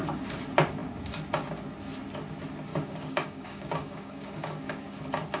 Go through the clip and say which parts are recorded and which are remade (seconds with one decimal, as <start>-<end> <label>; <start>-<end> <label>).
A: 0.0-2.7 recorded; 2.7-5.0 remade; 5.0-5.4 recorded